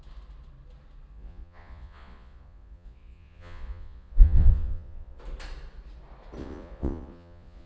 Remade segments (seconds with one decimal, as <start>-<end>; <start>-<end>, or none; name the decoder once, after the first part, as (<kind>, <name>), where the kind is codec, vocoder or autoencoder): 1.1-5.2 (vocoder, Vocos); 6.4-7.7